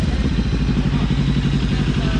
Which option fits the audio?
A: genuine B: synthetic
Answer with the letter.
A